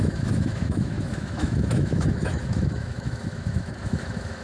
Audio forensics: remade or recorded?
remade